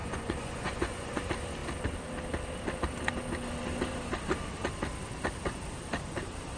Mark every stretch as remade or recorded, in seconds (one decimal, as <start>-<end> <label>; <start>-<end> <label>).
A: 0.0-1.2 remade; 1.2-6.6 recorded